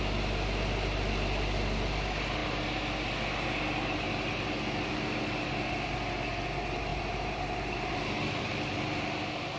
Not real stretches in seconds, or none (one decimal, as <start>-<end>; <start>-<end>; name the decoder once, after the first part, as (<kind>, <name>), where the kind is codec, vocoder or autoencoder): 6.9-7.9 (vocoder, BigVGAN v2)